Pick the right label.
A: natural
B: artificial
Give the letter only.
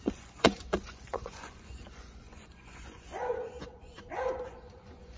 B